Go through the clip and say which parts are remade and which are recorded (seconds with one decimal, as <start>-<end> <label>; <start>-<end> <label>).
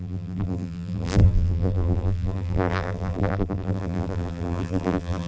0.0-5.3 remade